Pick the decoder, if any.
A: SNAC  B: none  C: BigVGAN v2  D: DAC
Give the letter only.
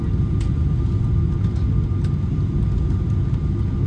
B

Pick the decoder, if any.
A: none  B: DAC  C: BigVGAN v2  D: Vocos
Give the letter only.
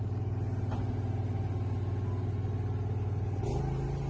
A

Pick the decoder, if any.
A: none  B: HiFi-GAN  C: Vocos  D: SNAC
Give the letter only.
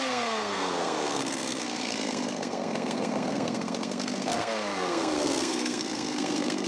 D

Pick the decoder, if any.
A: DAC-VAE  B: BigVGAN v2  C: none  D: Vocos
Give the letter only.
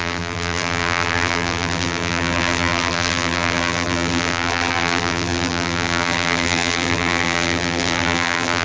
B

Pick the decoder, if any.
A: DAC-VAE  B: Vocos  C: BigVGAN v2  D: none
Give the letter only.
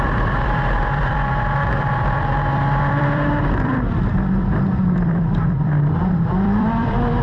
C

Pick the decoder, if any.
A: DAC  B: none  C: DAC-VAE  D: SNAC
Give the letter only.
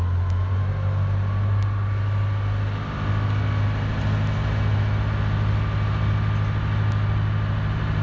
B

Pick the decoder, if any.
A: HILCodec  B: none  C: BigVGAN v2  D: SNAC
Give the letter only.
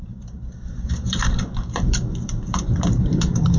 C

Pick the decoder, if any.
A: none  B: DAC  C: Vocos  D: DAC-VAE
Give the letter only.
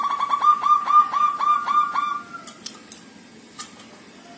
A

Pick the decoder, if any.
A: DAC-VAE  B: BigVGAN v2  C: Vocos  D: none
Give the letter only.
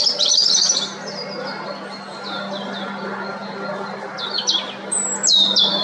D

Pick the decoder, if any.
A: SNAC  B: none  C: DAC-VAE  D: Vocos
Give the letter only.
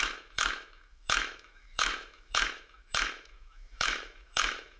C